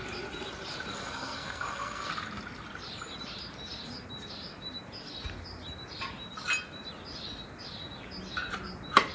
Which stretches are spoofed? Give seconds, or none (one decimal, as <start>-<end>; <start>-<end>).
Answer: 0.9-2.1